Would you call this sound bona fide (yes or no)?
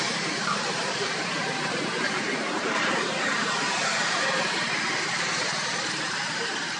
no